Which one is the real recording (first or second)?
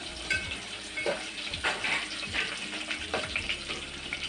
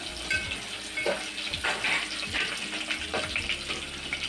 second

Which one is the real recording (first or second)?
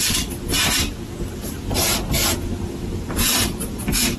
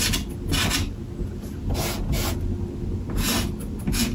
second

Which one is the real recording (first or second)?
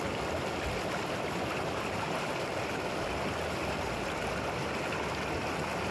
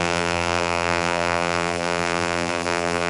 first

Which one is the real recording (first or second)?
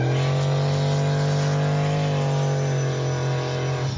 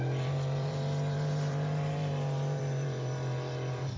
first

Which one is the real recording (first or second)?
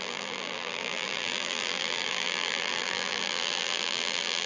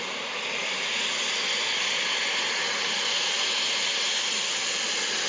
second